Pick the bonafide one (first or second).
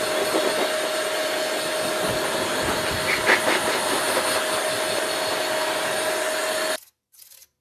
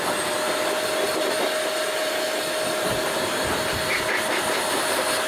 first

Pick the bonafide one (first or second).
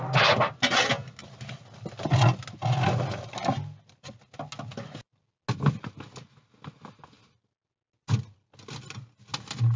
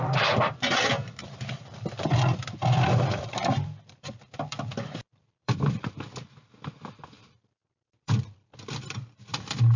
first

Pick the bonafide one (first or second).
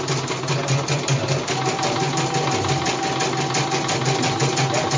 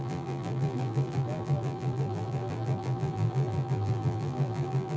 first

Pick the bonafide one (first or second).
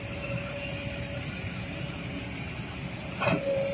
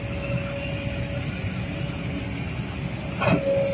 second